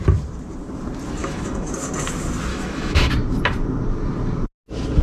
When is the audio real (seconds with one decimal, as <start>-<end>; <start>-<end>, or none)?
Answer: 0.0-1.2; 1.7-2.5; 3.1-5.0